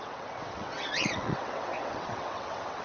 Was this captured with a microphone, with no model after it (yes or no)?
no